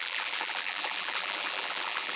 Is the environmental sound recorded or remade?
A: remade